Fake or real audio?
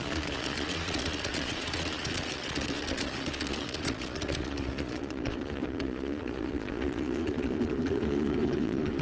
fake